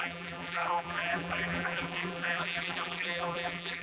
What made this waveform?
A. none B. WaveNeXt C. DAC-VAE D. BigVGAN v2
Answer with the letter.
D